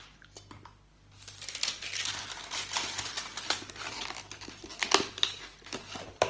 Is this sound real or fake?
real